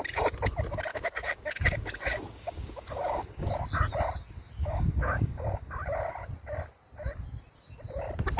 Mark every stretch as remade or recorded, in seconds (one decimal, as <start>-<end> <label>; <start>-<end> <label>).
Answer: 0.0-0.9 recorded; 0.9-3.5 remade; 3.5-4.6 recorded; 4.6-5.7 remade; 5.7-8.4 recorded